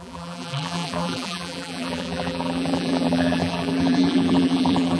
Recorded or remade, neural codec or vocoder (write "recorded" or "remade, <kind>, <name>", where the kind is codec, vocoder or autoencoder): remade, vocoder, BigVGAN v2